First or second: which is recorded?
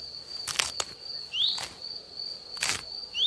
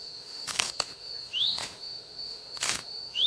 first